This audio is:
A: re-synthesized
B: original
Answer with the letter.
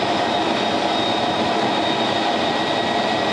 B